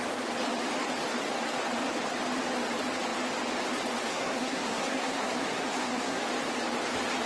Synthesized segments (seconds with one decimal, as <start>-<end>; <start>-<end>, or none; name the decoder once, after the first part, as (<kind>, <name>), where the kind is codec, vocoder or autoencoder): 4.1-6.2 (codec, SNAC)